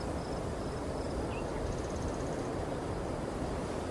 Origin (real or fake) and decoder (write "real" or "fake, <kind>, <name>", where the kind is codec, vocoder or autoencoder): real